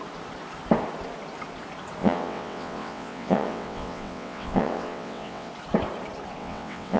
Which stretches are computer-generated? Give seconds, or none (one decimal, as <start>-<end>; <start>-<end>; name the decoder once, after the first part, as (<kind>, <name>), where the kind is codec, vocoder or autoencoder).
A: 2.0-5.5 (vocoder, WaveNeXt); 6.4-7.0